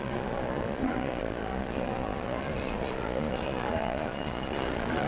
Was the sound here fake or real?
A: fake